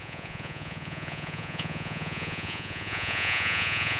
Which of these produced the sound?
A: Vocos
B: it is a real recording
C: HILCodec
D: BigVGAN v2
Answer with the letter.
A